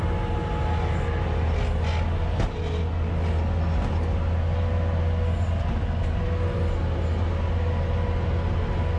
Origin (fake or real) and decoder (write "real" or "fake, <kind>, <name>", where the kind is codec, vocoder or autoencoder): real